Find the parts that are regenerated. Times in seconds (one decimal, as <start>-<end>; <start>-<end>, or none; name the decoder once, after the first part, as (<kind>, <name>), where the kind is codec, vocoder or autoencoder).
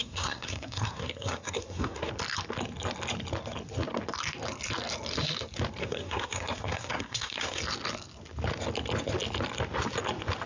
0.0-2.1 (codec, SNAC); 5.8-7.6